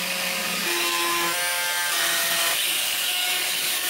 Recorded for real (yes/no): no